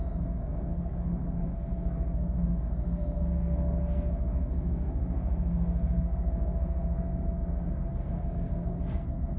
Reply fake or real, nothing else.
fake